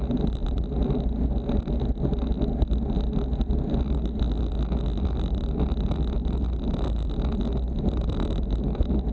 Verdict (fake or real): real